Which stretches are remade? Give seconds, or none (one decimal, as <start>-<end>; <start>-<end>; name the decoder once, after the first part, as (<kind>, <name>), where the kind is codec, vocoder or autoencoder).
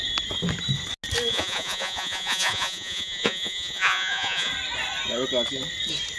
1.3-4.5 (vocoder, Vocos)